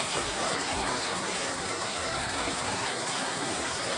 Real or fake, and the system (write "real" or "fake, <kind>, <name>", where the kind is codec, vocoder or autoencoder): fake, codec, SNAC